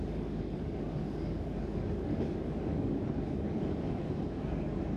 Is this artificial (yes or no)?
yes